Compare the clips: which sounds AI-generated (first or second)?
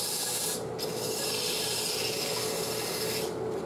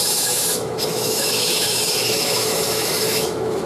second